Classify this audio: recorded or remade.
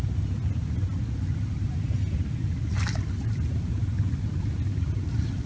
recorded